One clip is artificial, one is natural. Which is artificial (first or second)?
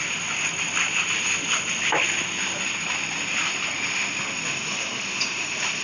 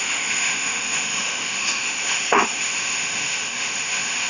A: second